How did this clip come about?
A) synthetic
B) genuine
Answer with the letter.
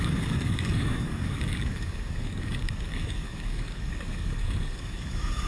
A